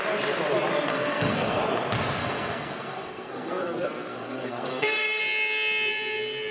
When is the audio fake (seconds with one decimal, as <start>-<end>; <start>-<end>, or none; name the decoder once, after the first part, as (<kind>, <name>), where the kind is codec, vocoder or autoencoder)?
0.9-1.6 (codec, SNAC); 2.2-5.2